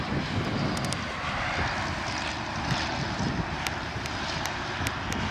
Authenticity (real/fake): real